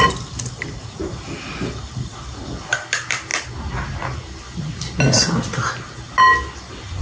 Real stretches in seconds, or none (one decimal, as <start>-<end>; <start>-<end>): 0.0-7.0